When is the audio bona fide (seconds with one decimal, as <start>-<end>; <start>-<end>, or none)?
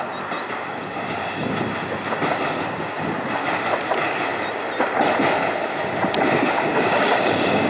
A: 0.0-6.7